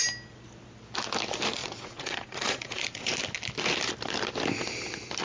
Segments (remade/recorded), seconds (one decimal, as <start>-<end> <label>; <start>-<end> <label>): 0.0-1.6 recorded; 1.6-3.1 remade; 3.1-5.2 recorded